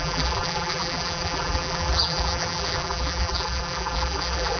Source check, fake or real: fake